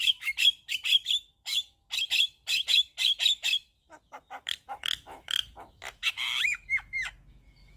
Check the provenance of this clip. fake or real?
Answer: fake